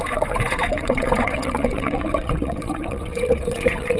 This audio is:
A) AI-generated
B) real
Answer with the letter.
A